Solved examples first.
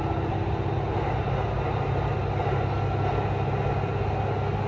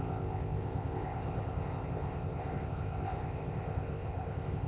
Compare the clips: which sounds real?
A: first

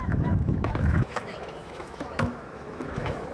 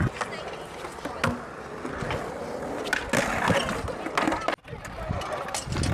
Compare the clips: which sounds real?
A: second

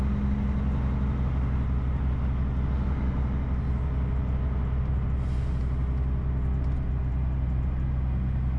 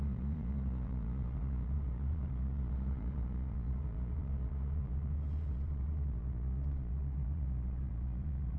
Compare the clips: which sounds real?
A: first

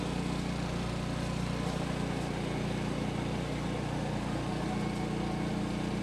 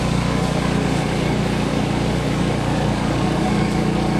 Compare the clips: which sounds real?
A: first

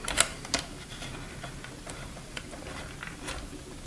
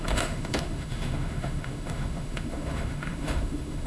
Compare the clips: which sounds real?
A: first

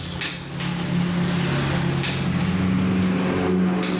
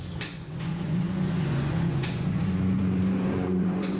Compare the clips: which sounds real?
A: first